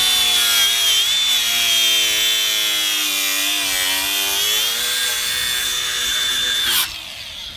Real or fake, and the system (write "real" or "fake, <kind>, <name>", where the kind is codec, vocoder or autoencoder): real